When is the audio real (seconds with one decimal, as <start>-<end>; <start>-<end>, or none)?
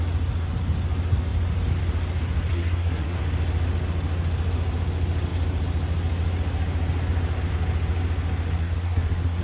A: 0.0-2.5; 3.2-8.6